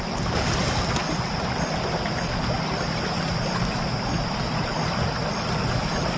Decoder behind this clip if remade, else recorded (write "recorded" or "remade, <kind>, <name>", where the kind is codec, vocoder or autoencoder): recorded